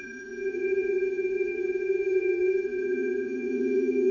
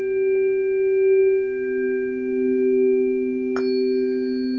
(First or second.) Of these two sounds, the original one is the second